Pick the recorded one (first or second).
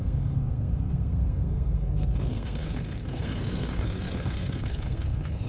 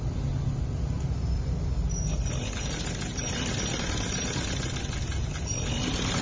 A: second